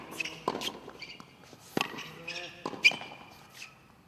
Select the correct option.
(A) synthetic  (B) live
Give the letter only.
B